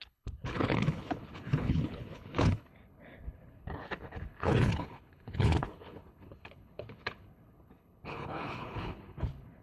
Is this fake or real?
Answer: fake